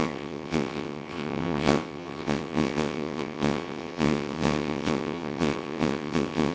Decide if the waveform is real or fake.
fake